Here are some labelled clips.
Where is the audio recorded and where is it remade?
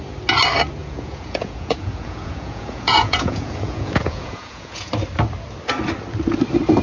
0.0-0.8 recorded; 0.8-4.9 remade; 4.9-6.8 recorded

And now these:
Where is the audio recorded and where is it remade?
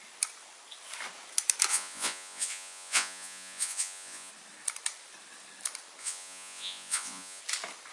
0.0-1.7 recorded; 1.7-4.3 remade; 4.3-6.0 recorded; 6.0-7.4 remade; 7.4-7.9 recorded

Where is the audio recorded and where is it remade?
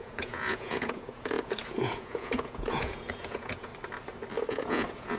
0.0-3.7 remade; 3.7-4.5 recorded; 4.5-5.2 remade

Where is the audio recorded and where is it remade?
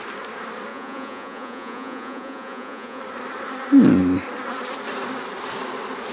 0.0-0.7 recorded; 0.7-3.0 remade; 3.0-6.1 recorded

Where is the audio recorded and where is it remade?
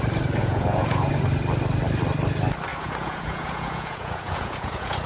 0.0-0.4 recorded; 0.4-1.1 remade; 1.1-2.7 recorded; 2.7-5.1 remade